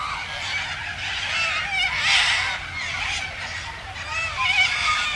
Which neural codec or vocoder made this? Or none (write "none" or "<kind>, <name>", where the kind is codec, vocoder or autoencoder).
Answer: none